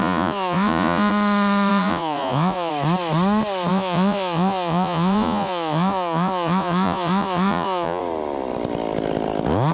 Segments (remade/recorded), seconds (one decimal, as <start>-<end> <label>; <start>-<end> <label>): 0.0-1.1 remade; 1.1-1.7 recorded; 1.7-2.7 remade; 2.7-3.7 recorded; 3.7-8.0 remade; 8.0-9.7 recorded